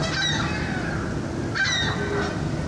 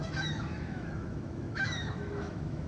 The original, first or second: first